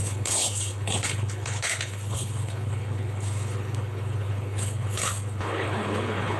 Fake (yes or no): yes